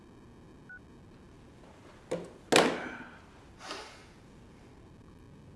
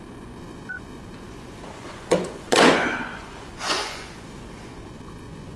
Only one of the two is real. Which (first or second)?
first